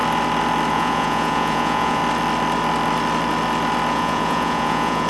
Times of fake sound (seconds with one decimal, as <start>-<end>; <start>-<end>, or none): 0.7-2.0; 3.9-5.1